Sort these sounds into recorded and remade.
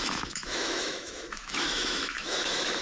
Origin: remade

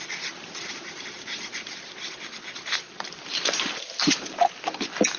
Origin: recorded